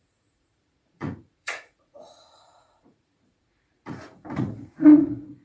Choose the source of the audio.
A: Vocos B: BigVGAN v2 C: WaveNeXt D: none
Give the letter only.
A